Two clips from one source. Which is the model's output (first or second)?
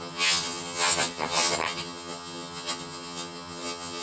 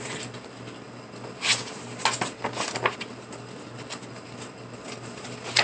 first